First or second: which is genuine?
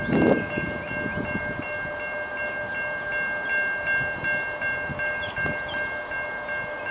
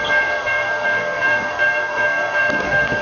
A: first